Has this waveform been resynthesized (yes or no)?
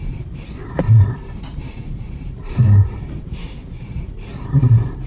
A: yes